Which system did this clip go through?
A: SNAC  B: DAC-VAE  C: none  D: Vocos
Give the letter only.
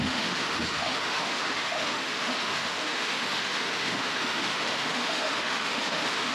B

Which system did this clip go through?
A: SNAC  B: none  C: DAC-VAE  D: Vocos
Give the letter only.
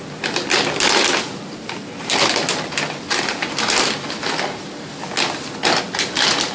B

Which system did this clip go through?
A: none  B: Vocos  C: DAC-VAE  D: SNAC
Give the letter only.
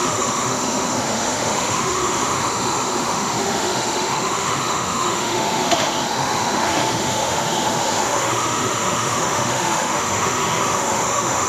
C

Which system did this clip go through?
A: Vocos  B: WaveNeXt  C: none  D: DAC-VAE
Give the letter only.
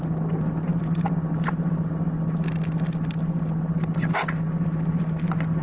C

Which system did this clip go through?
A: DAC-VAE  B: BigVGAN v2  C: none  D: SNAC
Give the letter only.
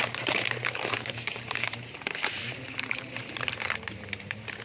B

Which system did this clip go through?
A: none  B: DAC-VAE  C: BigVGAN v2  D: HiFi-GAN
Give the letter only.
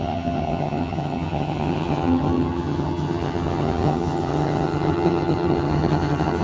D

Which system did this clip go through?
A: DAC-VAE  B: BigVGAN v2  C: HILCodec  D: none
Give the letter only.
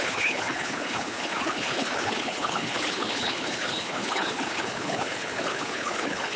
C